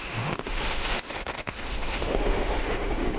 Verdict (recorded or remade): remade